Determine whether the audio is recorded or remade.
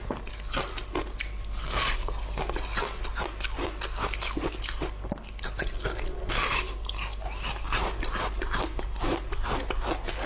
recorded